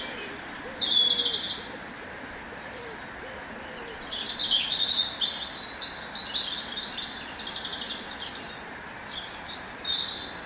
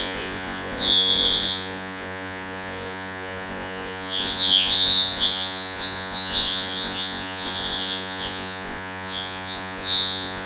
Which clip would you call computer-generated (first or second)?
second